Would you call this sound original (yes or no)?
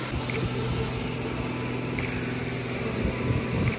yes